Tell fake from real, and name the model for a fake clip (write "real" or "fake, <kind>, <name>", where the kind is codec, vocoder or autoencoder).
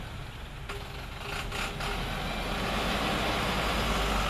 real